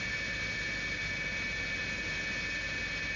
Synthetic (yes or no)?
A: no